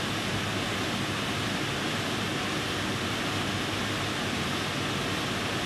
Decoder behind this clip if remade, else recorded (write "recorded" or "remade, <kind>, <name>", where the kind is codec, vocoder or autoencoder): recorded